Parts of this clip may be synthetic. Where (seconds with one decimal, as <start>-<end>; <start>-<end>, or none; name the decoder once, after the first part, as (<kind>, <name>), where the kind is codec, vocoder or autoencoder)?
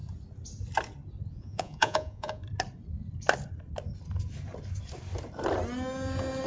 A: 1.3-2.4 (vocoder, Vocos)